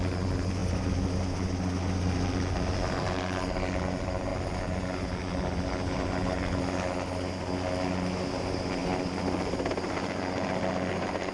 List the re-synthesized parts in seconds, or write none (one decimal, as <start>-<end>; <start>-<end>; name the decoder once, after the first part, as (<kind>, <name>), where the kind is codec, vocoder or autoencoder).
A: none